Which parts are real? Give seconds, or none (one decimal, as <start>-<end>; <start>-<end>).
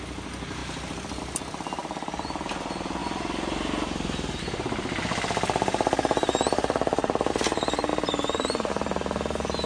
0.0-0.6; 1.2-3.0; 7.3-7.9; 8.7-9.7